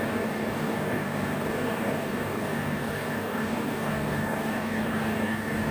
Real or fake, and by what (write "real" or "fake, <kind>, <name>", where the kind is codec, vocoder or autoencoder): fake, codec, DAC